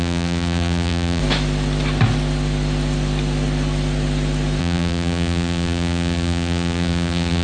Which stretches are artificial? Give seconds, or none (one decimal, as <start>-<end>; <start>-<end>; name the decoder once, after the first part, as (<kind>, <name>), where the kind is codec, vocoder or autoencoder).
0.0-1.2 (vocoder, BigVGAN v2); 4.6-7.4